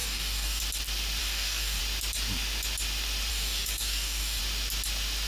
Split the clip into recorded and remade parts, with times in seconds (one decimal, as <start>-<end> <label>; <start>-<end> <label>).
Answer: 0.0-0.6 remade; 0.6-1.2 recorded; 1.2-1.8 remade; 1.8-3.3 recorded; 3.3-4.4 remade; 4.4-5.3 recorded